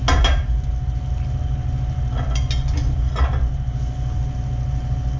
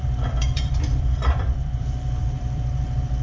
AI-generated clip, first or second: second